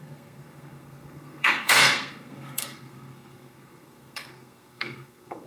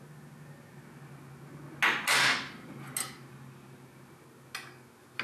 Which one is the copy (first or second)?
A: first